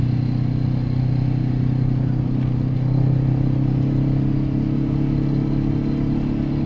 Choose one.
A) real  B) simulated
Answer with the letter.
A